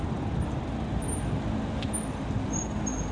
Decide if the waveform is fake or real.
real